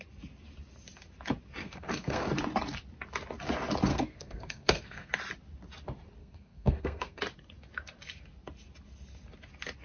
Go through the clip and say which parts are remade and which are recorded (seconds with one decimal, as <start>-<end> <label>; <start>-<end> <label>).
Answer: 0.0-1.6 recorded; 1.6-2.3 remade; 2.3-3.9 recorded; 3.9-5.1 remade; 5.1-6.2 recorded; 6.2-7.2 remade; 7.2-9.8 recorded